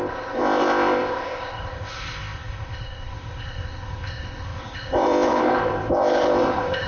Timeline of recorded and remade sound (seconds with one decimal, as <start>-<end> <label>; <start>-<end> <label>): 0.0-6.9 remade